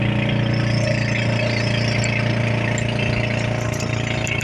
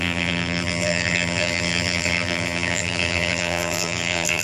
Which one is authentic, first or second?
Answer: first